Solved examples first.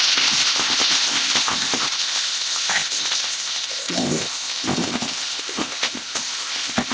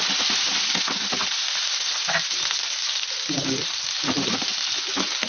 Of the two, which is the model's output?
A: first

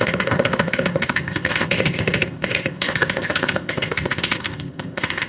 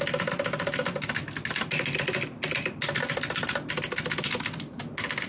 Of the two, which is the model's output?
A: first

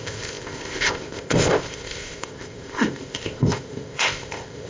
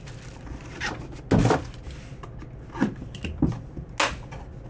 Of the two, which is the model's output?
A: first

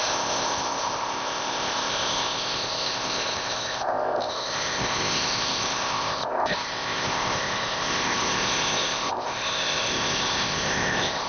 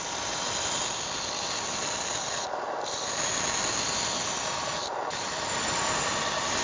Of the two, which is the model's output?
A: first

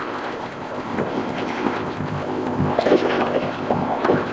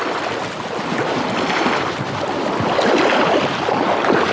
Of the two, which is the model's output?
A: first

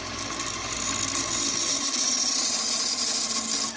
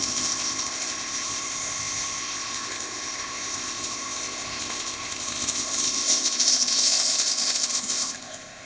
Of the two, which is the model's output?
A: second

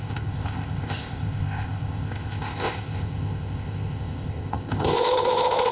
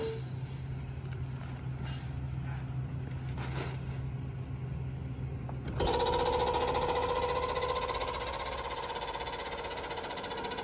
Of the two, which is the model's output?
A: first